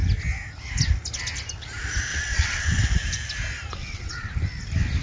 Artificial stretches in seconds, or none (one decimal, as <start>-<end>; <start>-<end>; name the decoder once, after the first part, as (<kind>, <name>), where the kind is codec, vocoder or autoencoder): 2.1-2.8 (vocoder, WaveNeXt); 3.8-4.4